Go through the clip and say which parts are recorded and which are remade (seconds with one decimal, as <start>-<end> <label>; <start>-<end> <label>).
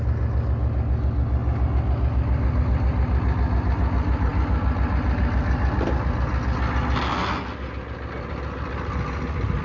0.0-9.6 recorded